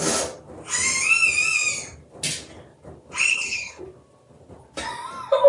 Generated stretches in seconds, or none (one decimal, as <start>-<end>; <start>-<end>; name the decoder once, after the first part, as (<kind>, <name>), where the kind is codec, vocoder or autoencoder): 3.3-3.8 (codec, HILCodec)